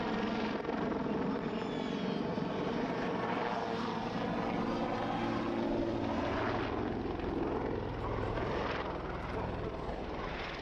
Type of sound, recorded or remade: recorded